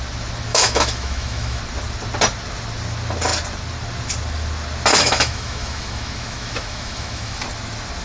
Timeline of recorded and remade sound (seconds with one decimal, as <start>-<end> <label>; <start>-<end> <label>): 0.0-0.5 recorded; 0.5-1.6 remade; 1.6-4.9 recorded; 4.9-7.4 remade; 7.4-8.0 recorded